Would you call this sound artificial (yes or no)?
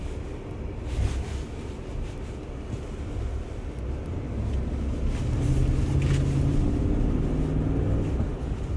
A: no